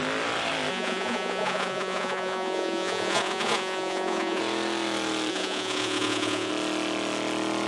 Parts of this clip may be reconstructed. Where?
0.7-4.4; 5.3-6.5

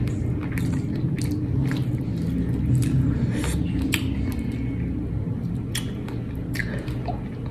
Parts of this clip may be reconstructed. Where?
none

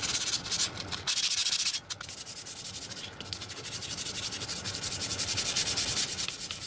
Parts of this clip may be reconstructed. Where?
none